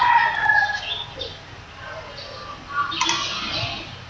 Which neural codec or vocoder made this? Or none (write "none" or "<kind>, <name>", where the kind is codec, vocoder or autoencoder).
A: none